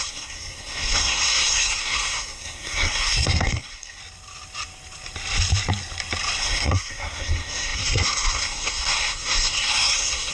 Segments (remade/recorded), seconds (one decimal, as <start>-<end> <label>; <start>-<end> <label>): 0.0-4.0 remade; 4.0-6.4 recorded; 6.4-10.3 remade